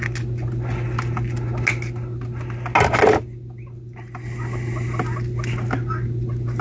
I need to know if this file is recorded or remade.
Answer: recorded